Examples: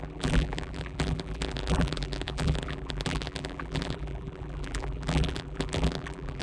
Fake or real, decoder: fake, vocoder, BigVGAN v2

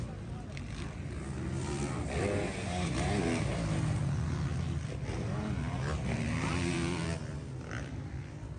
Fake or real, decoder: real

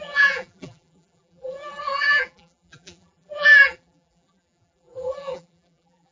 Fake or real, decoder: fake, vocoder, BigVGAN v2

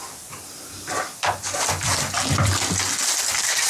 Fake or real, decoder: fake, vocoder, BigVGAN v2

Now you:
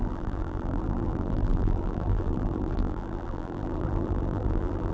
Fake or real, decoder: fake, vocoder, BigVGAN v2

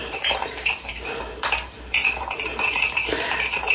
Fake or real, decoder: fake, vocoder, BigVGAN v2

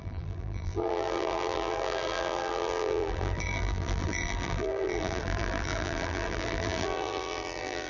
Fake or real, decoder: fake, vocoder, BigVGAN v2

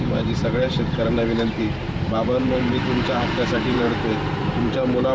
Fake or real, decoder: fake, vocoder, BigVGAN v2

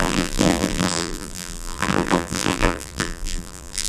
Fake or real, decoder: fake, vocoder, BigVGAN v2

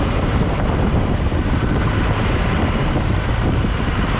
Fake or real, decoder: fake, vocoder, BigVGAN v2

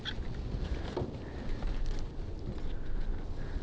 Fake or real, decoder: real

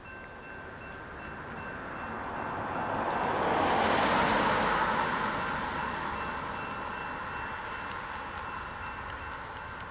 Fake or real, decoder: real